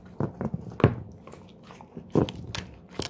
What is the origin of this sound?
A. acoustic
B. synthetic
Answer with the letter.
A